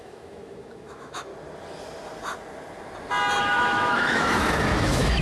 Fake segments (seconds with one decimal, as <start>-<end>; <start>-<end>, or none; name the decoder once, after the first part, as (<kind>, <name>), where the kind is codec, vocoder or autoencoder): 0.0-1.3 (autoencoder, DAC-VAE); 3.4-5.2